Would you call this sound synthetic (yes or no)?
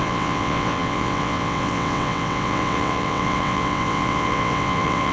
yes